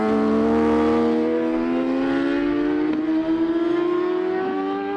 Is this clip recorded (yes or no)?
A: yes